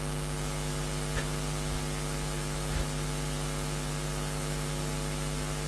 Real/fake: real